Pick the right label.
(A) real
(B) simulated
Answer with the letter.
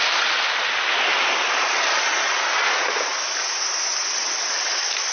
A